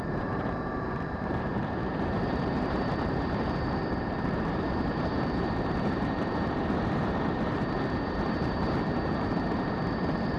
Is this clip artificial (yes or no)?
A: yes